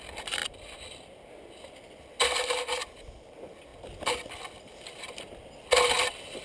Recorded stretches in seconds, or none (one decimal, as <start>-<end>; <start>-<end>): 0.0-6.4